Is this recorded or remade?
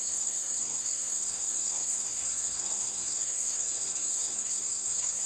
remade